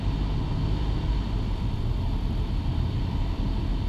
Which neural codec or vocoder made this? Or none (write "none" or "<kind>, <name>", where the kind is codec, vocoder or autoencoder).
none